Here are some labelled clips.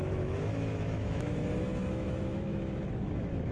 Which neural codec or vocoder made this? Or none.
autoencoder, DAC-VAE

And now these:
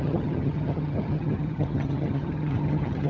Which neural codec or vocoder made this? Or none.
vocoder, HiFi-GAN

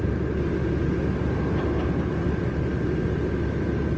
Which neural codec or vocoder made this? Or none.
none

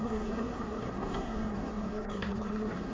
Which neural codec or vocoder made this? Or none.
codec, SNAC